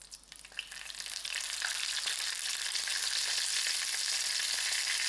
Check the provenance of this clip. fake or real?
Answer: real